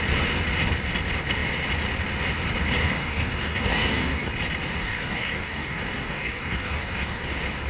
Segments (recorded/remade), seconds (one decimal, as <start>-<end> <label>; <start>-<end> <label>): 0.0-2.8 recorded; 2.8-4.3 remade; 4.3-4.8 recorded; 4.8-7.2 remade; 7.2-7.7 recorded